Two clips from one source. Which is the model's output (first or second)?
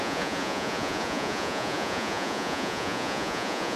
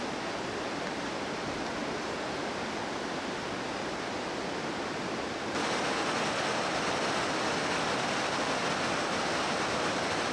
first